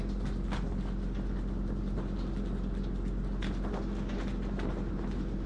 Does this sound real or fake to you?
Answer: real